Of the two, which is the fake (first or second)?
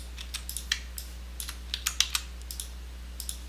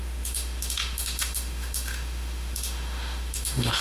second